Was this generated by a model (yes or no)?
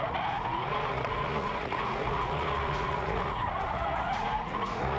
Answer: yes